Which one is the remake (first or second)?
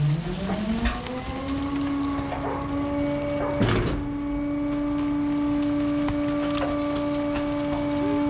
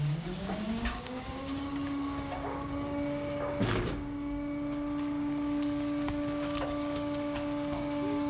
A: second